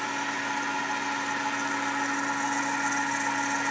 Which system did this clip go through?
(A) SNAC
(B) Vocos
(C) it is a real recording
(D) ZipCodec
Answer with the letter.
C